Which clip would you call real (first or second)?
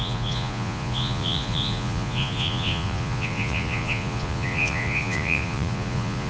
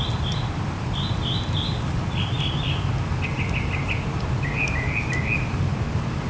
second